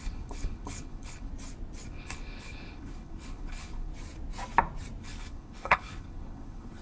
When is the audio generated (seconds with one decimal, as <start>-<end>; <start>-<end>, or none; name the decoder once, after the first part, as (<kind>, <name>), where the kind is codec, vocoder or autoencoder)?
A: 0.0-1.3 (codec, HILCodec); 1.9-3.9; 5.0-6.8